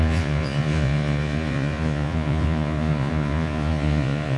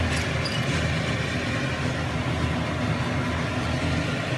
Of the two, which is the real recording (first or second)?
second